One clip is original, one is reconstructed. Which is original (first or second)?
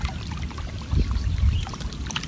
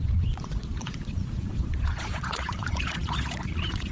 first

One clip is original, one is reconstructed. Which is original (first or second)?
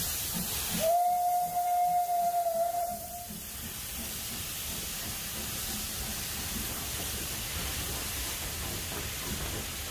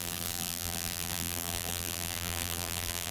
first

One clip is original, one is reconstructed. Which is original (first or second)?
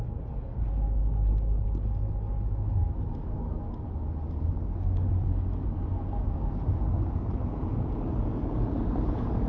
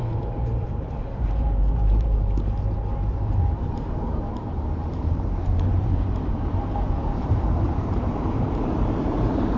first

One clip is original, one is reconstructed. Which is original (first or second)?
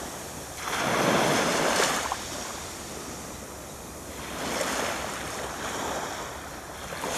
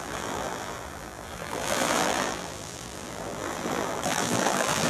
first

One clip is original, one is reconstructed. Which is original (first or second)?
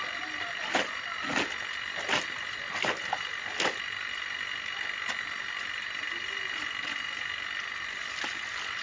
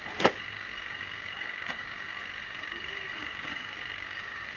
first